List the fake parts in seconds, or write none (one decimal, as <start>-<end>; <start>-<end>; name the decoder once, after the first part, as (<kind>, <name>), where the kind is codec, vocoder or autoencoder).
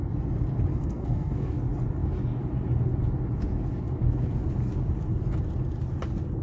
0.7-1.5 (codec, SNAC)